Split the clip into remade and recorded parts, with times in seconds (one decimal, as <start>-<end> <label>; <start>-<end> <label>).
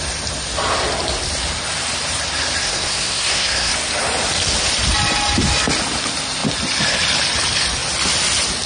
0.0-2.6 recorded; 2.6-3.7 remade; 3.7-8.7 recorded